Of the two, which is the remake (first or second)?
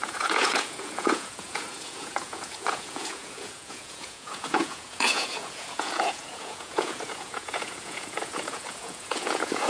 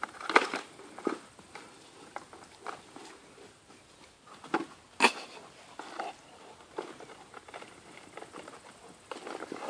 first